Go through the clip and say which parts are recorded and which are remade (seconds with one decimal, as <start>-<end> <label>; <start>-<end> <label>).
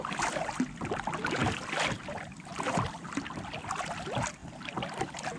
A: 0.0-2.5 recorded; 2.5-3.7 remade; 3.7-5.4 recorded